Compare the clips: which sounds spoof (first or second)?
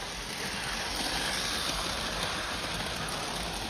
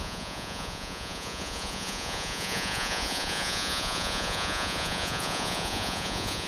second